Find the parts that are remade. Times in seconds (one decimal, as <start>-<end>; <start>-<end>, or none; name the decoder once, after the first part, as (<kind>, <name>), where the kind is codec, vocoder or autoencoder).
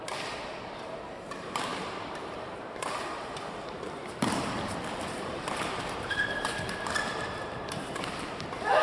0.0-8.8 (vocoder, BigVGAN v2)